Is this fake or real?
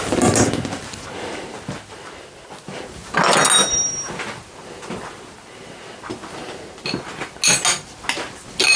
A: real